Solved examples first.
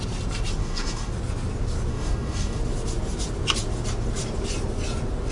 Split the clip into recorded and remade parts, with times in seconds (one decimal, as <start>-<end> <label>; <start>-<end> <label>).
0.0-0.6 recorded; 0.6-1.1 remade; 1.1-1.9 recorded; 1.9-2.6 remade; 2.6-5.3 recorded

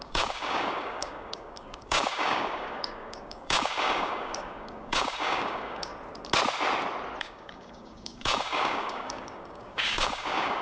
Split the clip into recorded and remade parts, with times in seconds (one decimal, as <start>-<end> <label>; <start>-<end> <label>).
0.0-5.9 remade; 5.9-7.2 recorded; 7.2-10.6 remade

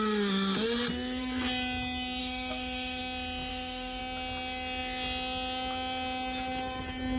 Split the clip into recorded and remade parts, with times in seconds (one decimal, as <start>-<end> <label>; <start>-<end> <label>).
0.0-2.2 recorded; 2.2-3.0 remade; 3.0-3.5 recorded; 3.5-4.0 remade; 4.0-7.2 recorded